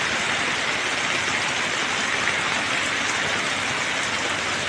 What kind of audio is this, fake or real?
real